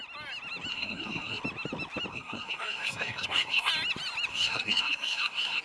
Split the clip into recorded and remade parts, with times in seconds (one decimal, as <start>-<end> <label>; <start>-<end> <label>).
0.0-0.7 recorded; 0.7-1.4 remade; 1.4-2.1 recorded; 2.1-3.7 remade; 3.7-4.3 recorded; 4.3-5.6 remade